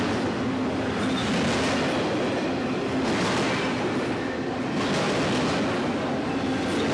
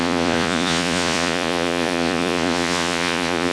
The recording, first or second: first